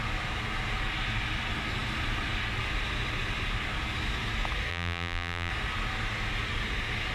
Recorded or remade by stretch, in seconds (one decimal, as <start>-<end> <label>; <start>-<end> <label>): 0.0-4.7 recorded; 4.7-5.5 remade; 5.5-7.1 recorded